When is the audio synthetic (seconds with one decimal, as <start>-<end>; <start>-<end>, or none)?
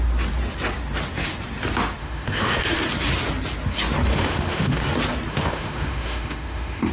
2.0-2.6; 4.1-4.8; 5.3-6.9